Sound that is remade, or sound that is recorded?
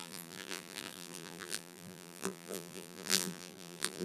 remade